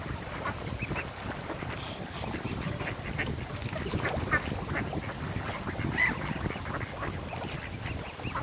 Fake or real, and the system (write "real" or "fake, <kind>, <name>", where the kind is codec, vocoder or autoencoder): real